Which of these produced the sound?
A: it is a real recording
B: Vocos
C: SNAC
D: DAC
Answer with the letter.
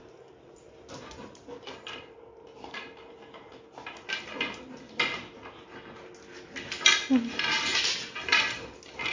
A